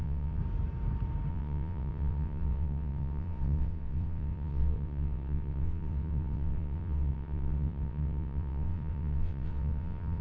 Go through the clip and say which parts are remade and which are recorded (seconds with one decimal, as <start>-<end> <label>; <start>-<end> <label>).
0.0-0.4 remade; 0.4-1.3 recorded; 1.3-10.2 remade